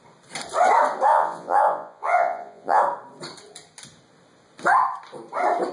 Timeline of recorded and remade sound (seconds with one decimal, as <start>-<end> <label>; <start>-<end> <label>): 0.0-1.1 recorded; 1.1-2.8 remade; 2.8-5.7 recorded

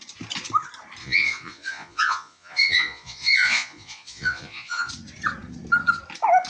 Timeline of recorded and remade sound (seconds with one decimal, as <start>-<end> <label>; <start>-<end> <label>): 0.0-1.0 recorded; 1.0-4.9 remade; 4.9-6.5 recorded

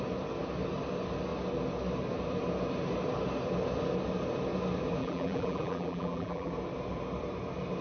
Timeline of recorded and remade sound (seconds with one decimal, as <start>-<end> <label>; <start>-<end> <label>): 0.0-5.0 recorded; 5.0-6.5 remade; 6.5-7.8 recorded

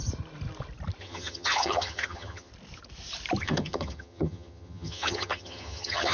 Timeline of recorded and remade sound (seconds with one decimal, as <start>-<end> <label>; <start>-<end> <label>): 0.0-1.0 recorded; 1.0-2.5 remade; 2.5-3.4 recorded; 3.4-6.1 remade